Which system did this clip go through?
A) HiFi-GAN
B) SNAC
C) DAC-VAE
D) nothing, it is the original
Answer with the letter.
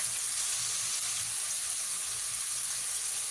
D